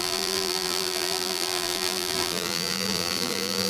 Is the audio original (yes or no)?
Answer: no